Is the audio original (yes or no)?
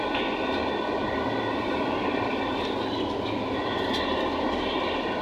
yes